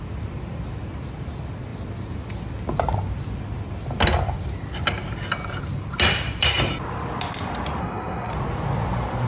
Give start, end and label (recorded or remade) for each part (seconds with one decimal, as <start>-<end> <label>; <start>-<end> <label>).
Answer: 0.0-7.8 recorded; 7.8-8.3 remade; 8.3-9.3 recorded